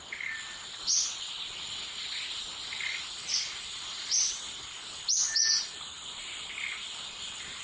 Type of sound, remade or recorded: recorded